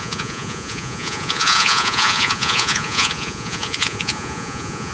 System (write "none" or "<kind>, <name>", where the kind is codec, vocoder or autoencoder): vocoder, Vocos